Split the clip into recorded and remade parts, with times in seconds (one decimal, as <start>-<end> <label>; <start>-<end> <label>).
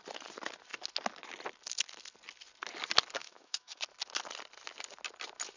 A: 0.0-3.2 recorded; 3.2-3.8 remade; 3.8-5.6 recorded